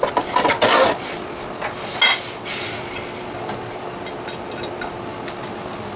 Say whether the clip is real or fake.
real